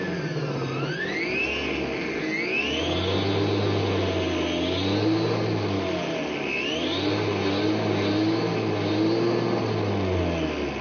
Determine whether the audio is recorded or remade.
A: recorded